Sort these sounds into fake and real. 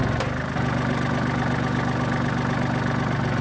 real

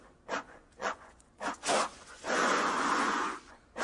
fake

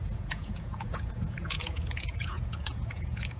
fake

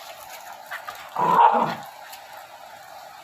real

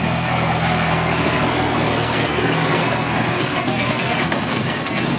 fake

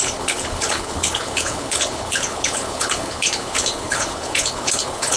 fake